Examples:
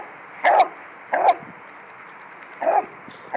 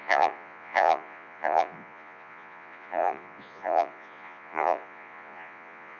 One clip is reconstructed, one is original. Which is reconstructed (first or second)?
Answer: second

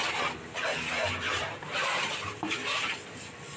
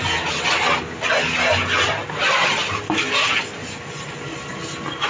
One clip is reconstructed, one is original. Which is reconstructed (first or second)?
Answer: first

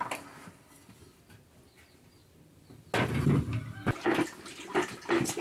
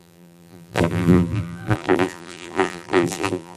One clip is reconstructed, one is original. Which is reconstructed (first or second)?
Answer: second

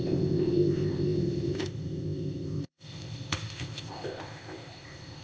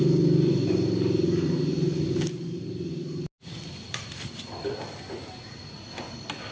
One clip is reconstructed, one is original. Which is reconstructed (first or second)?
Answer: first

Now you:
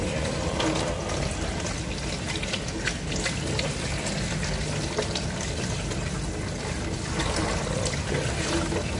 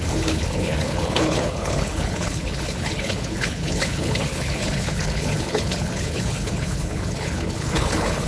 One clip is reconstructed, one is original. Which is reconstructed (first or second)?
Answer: second